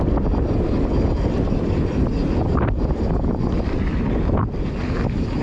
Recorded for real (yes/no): yes